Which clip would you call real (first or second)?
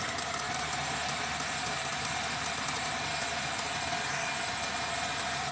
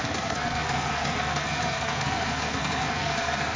first